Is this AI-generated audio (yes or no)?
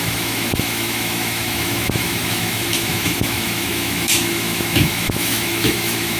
yes